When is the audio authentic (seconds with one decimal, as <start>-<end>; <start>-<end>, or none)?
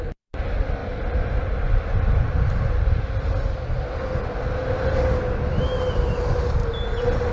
0.0-7.3